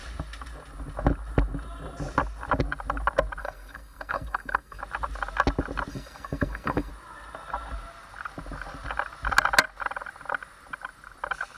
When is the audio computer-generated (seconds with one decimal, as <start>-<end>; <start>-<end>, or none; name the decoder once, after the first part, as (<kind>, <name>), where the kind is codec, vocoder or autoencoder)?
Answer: 3.4-4.8 (codec, SNAC); 5.9-6.9